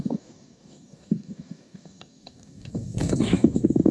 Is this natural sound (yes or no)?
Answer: no